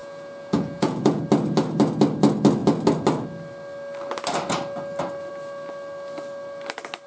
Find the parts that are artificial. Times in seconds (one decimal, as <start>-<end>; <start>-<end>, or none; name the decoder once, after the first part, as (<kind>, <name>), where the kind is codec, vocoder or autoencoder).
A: 0.0-1.2 (vocoder, Vocos)